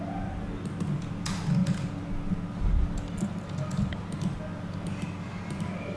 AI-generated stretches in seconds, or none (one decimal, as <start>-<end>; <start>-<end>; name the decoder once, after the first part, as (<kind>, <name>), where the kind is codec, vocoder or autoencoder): none

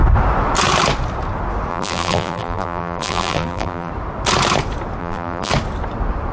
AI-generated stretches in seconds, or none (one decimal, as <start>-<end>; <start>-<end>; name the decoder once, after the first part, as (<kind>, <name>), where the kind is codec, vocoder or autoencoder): 1.7-3.9 (vocoder, BigVGAN v2); 5.0-5.5

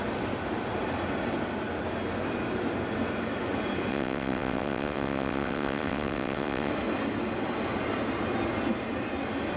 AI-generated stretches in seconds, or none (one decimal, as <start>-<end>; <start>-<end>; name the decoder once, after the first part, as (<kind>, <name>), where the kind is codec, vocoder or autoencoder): 3.9-6.7 (vocoder, WaveNeXt)